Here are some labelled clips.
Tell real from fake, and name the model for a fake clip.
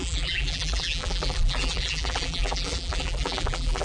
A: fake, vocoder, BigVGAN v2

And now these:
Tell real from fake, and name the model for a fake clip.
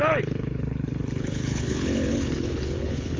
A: fake, codec, HILCodec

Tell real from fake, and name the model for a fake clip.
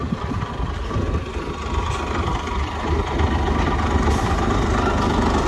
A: real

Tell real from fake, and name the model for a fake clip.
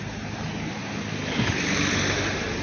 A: real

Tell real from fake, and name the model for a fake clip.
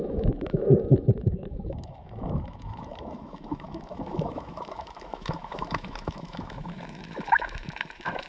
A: fake, autoencoder, DAC-VAE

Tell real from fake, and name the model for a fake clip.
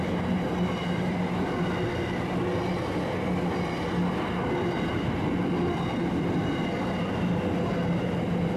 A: real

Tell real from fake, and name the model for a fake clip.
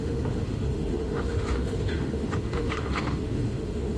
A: fake, autoencoder, DAC-VAE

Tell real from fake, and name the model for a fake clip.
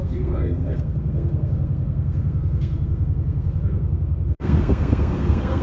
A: fake, codec, SNAC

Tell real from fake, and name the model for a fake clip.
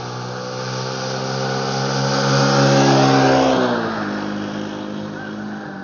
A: real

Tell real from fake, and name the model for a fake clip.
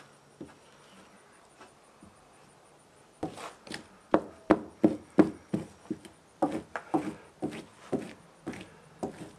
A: real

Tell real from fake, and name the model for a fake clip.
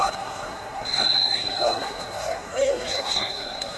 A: fake, codec, SNAC